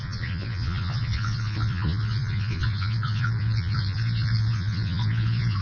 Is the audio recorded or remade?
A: remade